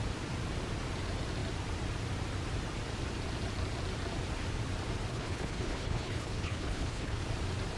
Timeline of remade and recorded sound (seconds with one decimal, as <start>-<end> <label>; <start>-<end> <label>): 0.0-5.1 recorded; 5.1-7.2 remade; 7.2-7.8 recorded